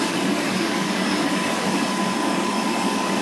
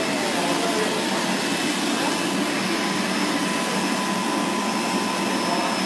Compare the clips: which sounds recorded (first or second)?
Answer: second